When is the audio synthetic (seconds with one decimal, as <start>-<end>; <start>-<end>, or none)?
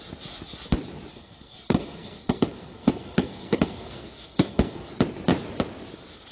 1.1-4.9